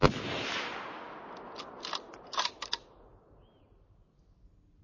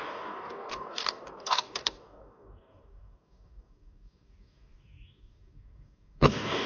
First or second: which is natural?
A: first